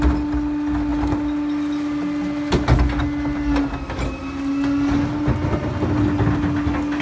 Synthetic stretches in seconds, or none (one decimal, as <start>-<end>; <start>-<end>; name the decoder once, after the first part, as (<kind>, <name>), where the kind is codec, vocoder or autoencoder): none